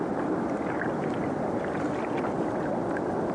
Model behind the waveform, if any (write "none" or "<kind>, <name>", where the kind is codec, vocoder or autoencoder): none